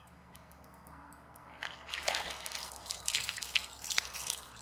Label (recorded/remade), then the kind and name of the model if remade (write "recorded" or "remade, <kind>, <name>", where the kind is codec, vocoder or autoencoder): remade, codec, SNAC